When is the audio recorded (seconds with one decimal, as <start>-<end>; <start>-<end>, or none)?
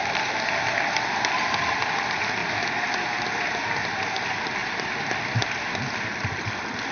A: 2.4-3.3; 4.6-5.4